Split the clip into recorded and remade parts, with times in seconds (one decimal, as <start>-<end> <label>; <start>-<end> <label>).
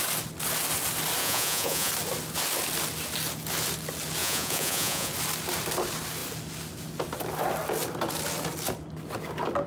0.0-1.2 recorded; 1.2-1.9 remade; 1.9-4.2 recorded; 4.2-5.1 remade; 5.1-9.7 recorded